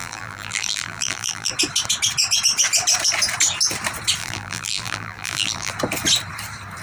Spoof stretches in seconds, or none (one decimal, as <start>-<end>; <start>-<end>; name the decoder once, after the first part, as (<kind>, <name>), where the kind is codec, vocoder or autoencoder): 0.0-1.5 (vocoder, BigVGAN v2); 4.2-5.7